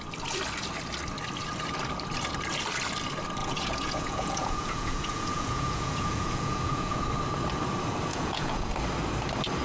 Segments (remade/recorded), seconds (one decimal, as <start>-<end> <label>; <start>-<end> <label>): 0.0-3.4 recorded; 3.4-7.0 remade; 7.0-8.1 recorded; 8.1-8.7 remade; 8.7-9.6 recorded